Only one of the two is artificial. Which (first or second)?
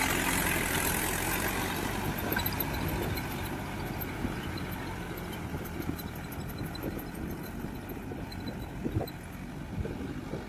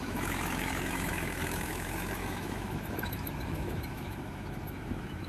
second